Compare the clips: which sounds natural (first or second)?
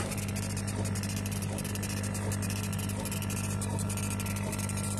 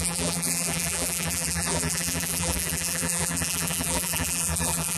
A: first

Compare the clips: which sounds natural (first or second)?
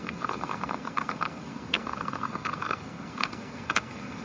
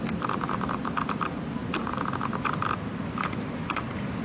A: second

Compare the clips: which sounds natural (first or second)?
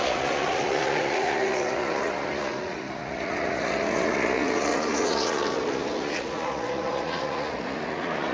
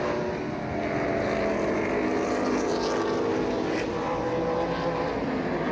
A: second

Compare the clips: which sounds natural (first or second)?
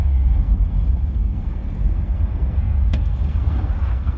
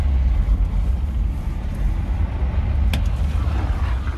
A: second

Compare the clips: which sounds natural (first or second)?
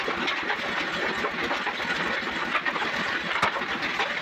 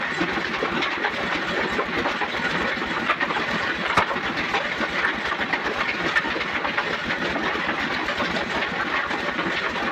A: first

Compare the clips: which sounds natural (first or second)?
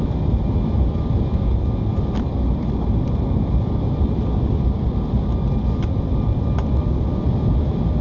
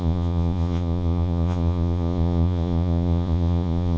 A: first